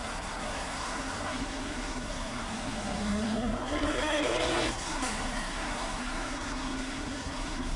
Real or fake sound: fake